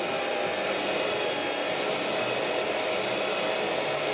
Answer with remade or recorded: recorded